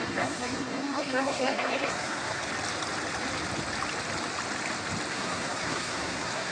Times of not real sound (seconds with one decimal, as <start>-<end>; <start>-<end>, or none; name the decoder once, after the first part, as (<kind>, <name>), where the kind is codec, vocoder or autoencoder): 0.0-2.5 (codec, SNAC); 5.1-6.5